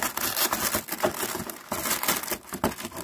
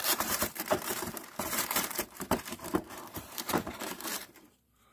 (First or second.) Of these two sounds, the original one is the first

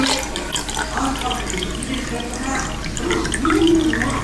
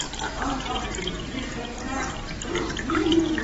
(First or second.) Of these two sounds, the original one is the first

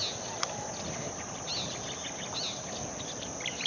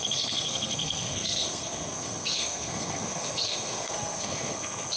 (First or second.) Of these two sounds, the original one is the first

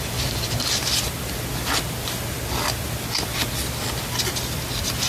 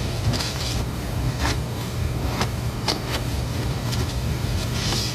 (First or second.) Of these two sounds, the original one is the first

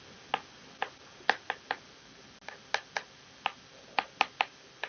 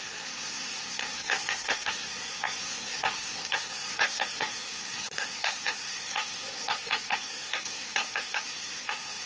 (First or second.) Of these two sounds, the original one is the first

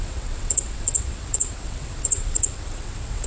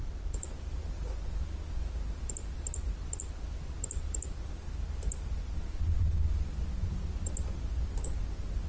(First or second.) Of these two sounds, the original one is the second